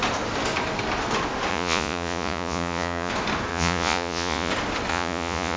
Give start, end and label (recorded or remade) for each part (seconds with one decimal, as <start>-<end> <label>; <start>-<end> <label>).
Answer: 0.0-1.5 recorded; 1.5-3.1 remade; 3.1-3.5 recorded; 3.5-4.5 remade; 4.5-4.9 recorded; 4.9-5.6 remade